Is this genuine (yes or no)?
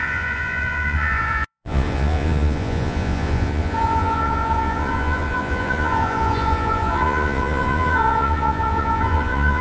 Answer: no